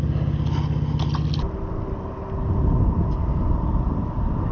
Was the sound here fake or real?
real